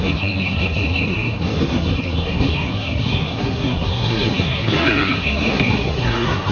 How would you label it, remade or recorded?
remade